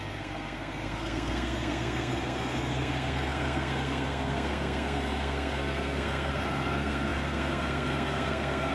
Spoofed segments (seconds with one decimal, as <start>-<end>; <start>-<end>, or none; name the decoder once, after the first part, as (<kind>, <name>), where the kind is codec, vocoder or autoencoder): 0.0-8.7 (codec, SNAC)